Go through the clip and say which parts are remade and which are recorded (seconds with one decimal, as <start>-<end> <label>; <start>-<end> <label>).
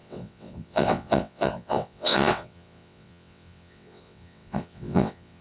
0.0-5.4 remade